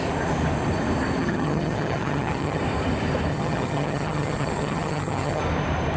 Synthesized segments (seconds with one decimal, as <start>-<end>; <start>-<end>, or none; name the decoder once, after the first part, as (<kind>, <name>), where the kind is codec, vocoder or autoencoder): 1.2-2.6 (vocoder, HiFi-GAN); 3.3-5.4